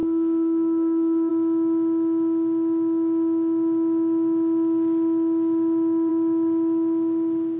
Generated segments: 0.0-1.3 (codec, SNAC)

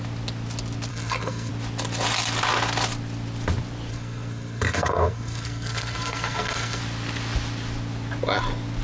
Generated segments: 0.9-1.5 (codec, SNAC); 3.9-6.8

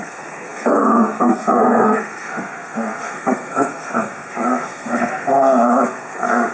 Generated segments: 0.0-6.5 (codec, SNAC)

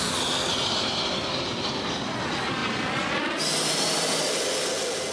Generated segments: none

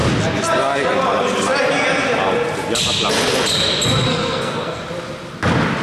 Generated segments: 4.1-4.8 (codec, SNAC)